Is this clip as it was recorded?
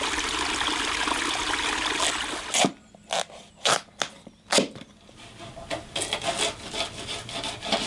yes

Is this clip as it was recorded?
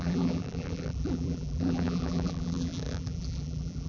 no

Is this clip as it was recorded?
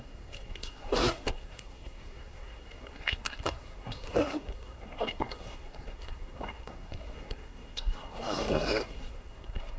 no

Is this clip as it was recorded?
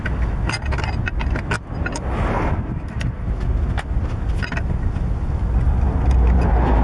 yes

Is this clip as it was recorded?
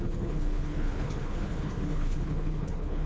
no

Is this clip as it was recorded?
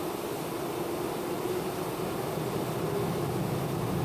yes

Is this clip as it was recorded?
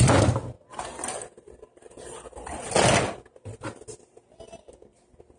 yes